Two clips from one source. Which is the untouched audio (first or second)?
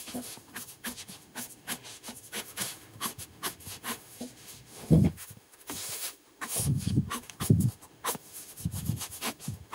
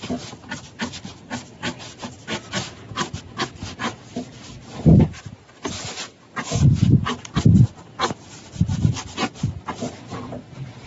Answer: second